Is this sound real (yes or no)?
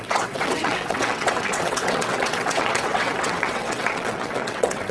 no